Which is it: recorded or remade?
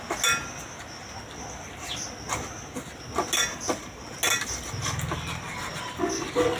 recorded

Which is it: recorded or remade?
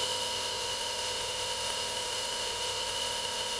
remade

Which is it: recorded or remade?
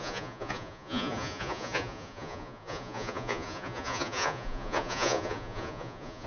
remade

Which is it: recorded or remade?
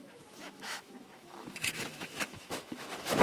remade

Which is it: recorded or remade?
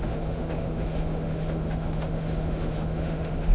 remade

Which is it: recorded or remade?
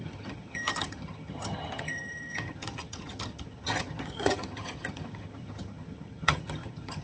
remade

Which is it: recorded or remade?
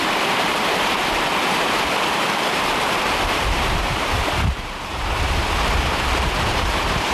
remade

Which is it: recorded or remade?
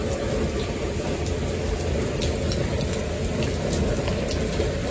recorded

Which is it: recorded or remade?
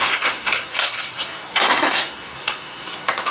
remade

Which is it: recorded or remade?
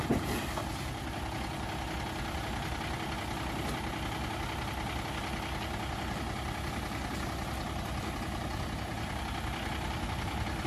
recorded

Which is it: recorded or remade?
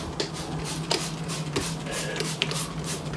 recorded